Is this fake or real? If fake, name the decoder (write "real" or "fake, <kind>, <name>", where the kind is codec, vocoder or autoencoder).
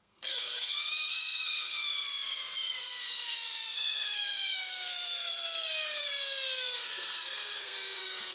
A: fake, codec, SNAC